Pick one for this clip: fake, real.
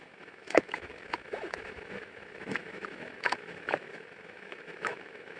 fake